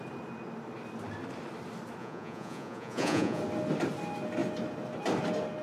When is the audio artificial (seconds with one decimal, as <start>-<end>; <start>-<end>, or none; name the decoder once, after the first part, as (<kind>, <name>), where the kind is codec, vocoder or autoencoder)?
2.0-3.4 (vocoder, Vocos)